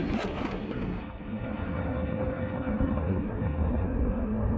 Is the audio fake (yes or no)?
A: yes